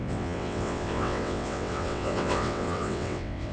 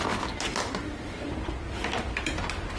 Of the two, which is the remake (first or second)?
first